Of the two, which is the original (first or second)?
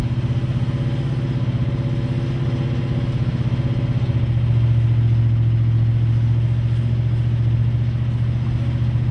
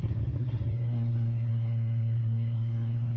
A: first